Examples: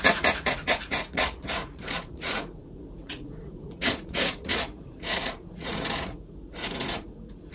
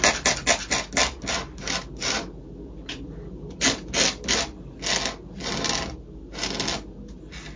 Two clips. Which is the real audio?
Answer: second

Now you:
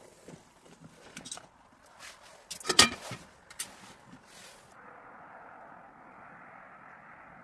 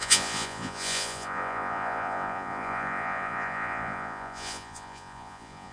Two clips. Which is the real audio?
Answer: first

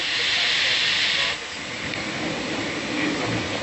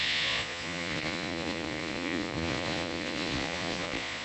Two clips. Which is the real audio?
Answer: first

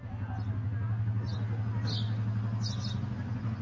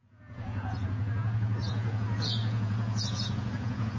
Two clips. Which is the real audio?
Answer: first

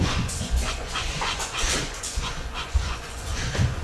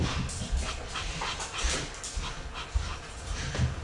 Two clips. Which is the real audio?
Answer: second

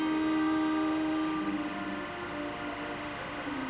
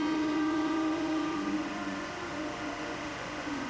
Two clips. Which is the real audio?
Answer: first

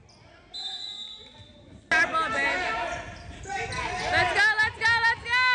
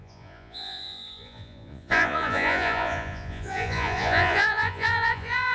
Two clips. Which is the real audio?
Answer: first